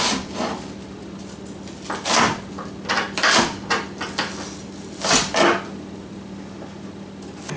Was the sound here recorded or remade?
recorded